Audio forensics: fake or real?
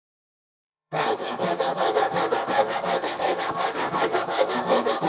fake